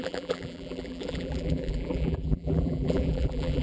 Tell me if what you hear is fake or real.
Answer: fake